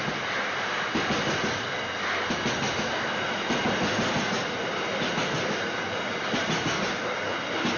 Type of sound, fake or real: real